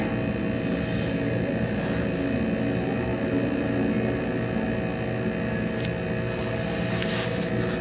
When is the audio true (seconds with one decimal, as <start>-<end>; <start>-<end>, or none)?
0.0-7.8